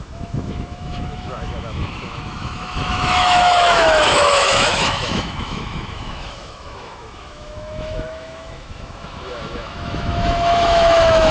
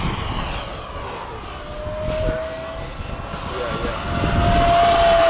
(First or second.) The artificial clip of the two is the first